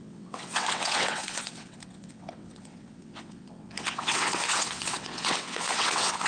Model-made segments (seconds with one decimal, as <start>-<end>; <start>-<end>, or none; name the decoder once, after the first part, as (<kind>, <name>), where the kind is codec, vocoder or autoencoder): 0.0-6.3 (vocoder, WaveNeXt)